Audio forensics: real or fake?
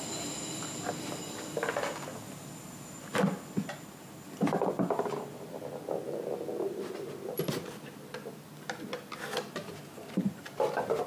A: real